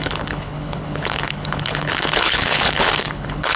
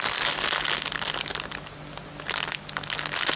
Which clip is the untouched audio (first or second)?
second